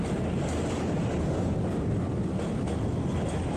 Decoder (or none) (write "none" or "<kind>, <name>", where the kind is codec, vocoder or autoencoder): none